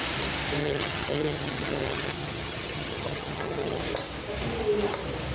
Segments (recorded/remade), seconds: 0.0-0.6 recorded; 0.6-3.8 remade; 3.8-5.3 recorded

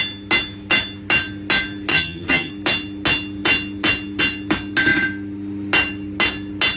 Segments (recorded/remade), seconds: 0.0-1.9 recorded; 1.9-2.5 remade; 2.5-6.8 recorded

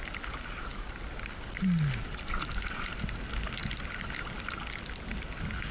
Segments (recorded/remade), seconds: 0.0-5.7 recorded

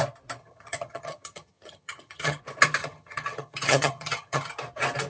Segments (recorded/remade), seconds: 0.0-0.4 recorded; 0.4-2.4 remade; 2.4-2.8 recorded; 2.8-4.5 remade; 4.5-5.1 recorded

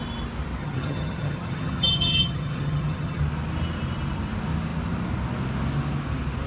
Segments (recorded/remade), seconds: 0.0-0.6 recorded; 0.6-3.2 remade; 3.2-6.5 recorded